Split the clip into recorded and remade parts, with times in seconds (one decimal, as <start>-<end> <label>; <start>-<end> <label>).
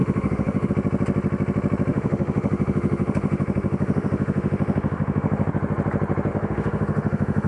0.0-0.7 remade; 0.7-1.9 recorded; 1.9-5.5 remade; 5.5-6.3 recorded; 6.3-7.5 remade